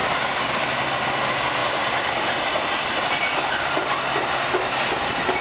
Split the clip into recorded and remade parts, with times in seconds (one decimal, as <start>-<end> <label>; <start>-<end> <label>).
0.0-1.6 recorded; 1.6-2.2 remade; 2.2-5.4 recorded